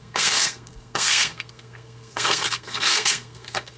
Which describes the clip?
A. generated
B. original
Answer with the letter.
A